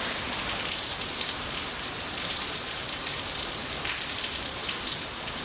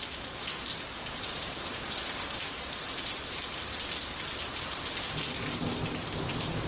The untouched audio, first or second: second